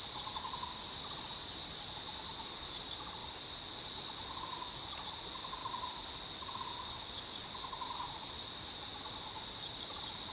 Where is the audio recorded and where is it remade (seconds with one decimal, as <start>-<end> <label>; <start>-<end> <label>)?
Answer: 0.0-10.3 recorded